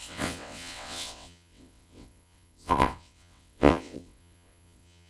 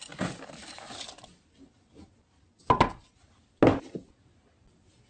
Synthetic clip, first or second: first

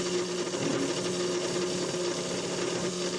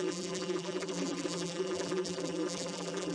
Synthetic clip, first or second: second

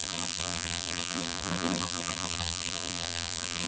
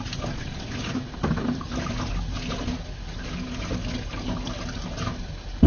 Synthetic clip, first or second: first